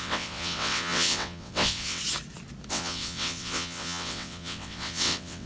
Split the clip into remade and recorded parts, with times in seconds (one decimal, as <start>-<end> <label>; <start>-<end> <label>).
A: 0.0-2.0 remade; 2.0-2.7 recorded; 2.7-5.5 remade